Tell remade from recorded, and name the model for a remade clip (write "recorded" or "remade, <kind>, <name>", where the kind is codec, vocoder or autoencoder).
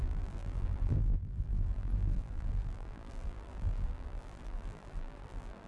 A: remade, vocoder, BigVGAN v2